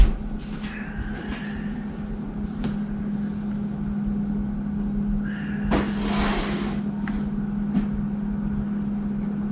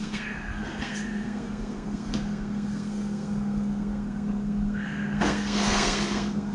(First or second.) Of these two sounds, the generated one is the second